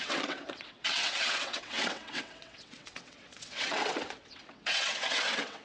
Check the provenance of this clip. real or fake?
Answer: fake